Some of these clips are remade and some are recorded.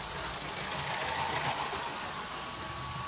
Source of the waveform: recorded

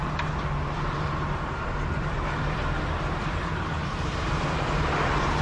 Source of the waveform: remade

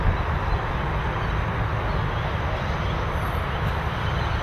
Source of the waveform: recorded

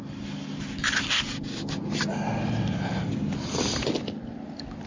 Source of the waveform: recorded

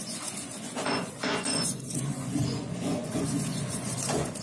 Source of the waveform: remade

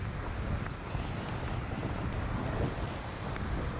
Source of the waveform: recorded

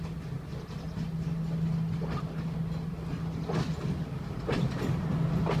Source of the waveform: recorded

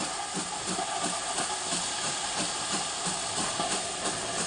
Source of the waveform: recorded